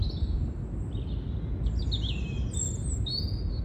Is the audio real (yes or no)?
yes